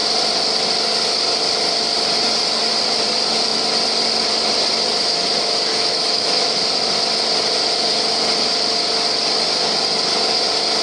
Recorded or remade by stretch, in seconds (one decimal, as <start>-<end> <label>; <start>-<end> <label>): 0.0-5.7 recorded; 5.7-6.6 remade; 6.6-10.8 recorded